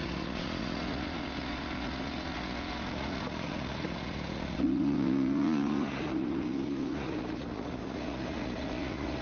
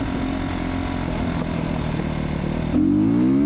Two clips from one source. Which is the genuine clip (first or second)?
second